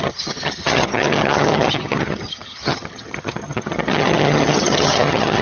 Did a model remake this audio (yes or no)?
yes